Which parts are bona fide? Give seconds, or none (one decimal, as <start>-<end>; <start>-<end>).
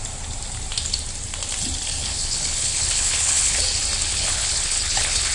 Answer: 0.0-2.0; 3.6-4.1